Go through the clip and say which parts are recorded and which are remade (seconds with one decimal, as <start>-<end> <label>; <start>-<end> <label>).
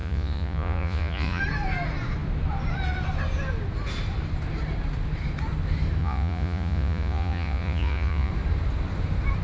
0.0-1.4 remade; 1.4-6.0 recorded; 6.0-8.3 remade; 8.3-9.4 recorded